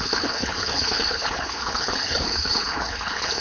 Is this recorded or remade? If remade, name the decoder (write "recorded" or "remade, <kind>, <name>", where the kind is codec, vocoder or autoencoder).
remade, codec, HILCodec